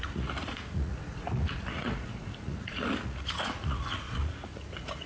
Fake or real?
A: fake